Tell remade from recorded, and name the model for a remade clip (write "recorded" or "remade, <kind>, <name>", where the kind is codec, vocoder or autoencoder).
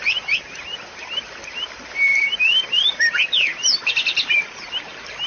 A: remade, vocoder, BigVGAN v2